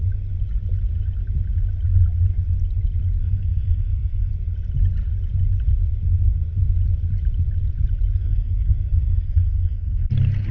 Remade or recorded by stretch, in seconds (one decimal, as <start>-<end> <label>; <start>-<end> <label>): 0.0-3.2 recorded; 3.2-4.3 remade; 4.3-8.2 recorded; 8.2-10.1 remade; 10.1-10.5 recorded

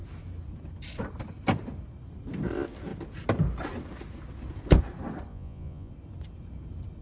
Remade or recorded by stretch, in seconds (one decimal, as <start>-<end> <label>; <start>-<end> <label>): 0.0-5.3 recorded; 5.3-5.9 remade; 5.9-7.0 recorded

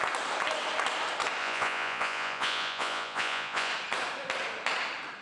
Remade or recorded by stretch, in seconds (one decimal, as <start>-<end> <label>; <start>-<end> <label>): 0.0-1.4 recorded; 1.4-3.7 remade; 3.7-5.2 recorded